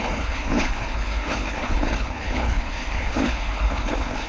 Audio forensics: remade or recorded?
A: remade